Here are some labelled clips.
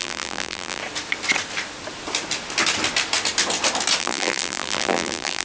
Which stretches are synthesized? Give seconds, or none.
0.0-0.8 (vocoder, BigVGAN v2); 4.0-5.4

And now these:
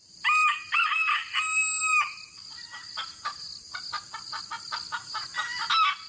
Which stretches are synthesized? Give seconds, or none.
none

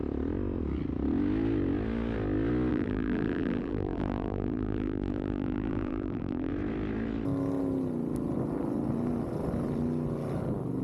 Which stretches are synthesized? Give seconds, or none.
2.7-6.5 (vocoder, BigVGAN v2)

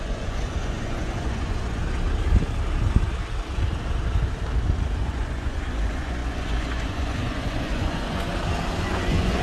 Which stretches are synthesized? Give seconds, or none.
0.0-1.8 (vocoder, Vocos); 5.0-8.3; 8.8-9.4

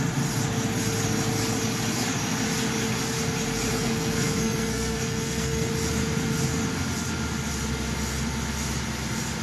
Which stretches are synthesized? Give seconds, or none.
3.7-5.7 (codec, SNAC)

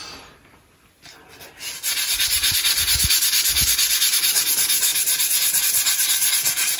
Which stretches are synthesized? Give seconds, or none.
none

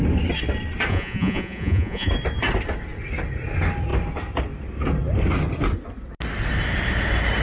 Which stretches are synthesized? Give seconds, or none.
0.9-2.1 (vocoder, Vocos)